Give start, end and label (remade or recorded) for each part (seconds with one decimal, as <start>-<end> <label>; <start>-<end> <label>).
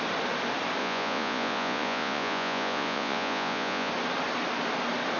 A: 0.0-0.8 recorded; 0.8-3.9 remade; 3.9-5.2 recorded